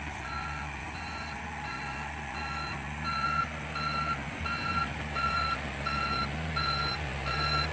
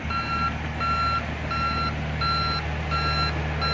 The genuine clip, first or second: second